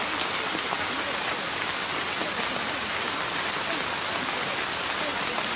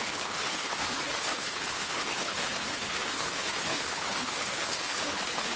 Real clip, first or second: first